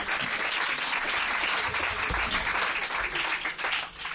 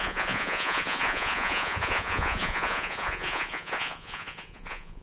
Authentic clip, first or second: first